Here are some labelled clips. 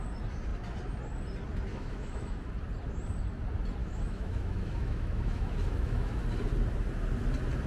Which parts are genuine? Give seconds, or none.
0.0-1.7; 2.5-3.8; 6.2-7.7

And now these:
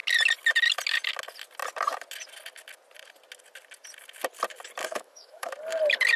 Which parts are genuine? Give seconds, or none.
0.0-4.8; 5.5-6.2

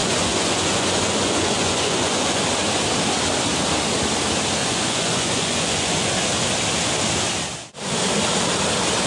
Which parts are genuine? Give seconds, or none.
2.4-4.6; 6.1-9.1